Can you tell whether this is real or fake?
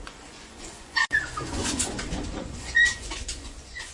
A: fake